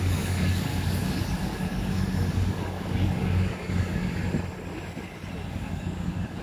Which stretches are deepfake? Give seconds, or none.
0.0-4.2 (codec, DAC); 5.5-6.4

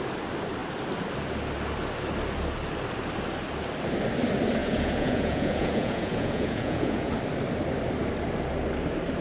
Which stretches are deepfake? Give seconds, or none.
4.6-7.1 (vocoder, Vocos)